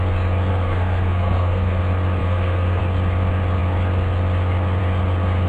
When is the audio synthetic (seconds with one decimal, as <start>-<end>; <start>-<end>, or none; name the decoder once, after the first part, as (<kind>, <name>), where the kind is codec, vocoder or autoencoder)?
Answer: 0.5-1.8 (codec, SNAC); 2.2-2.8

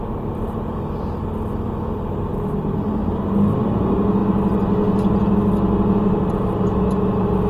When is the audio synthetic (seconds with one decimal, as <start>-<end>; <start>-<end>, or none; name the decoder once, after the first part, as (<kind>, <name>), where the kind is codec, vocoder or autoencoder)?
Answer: none

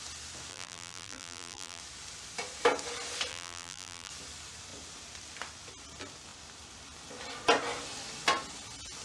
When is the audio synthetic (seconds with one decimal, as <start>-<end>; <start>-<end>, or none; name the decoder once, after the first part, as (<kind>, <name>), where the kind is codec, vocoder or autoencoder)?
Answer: 0.5-1.8 (vocoder, BigVGAN v2); 3.3-4.1

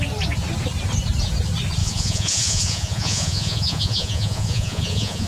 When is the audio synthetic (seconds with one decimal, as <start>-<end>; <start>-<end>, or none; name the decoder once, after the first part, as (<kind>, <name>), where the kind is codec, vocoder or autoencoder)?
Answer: 1.8-5.3 (vocoder, Vocos)

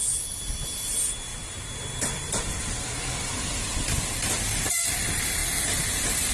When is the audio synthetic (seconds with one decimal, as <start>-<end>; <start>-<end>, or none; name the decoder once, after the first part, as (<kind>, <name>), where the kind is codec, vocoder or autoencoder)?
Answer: none

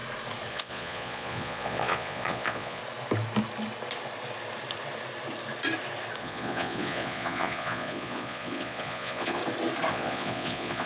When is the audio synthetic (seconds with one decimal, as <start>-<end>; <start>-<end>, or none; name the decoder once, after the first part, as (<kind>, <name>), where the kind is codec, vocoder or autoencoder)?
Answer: 0.5-2.8 (vocoder, Vocos); 6.2-9.4; 9.9-10.9

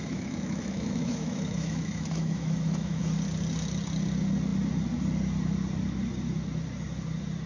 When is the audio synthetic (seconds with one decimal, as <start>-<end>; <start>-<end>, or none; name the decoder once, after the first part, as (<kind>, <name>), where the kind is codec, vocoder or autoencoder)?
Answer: 0.0-3.0 (autoencoder, DAC-VAE)